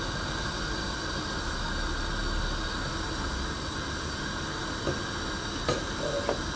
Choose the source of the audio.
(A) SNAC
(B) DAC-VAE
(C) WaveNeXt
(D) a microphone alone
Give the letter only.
D